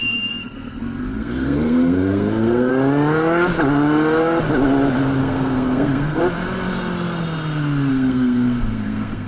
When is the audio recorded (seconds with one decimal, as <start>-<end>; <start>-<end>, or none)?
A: 2.7-5.2; 6.2-7.9